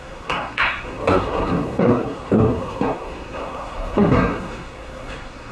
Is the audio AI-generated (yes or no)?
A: yes